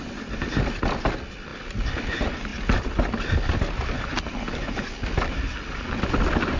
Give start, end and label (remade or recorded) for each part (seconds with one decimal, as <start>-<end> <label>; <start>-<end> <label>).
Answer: 0.0-6.6 recorded